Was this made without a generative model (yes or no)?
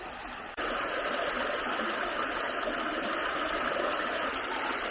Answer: yes